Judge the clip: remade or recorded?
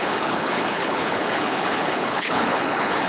remade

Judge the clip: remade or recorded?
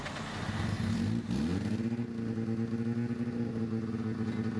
recorded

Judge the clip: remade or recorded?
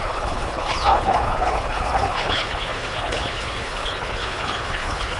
remade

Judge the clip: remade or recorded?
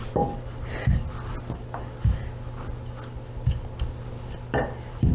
recorded